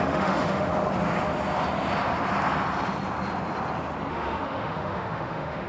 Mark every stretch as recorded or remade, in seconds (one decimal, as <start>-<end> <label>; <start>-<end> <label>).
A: 0.0-0.7 remade; 0.7-4.1 recorded; 4.1-5.7 remade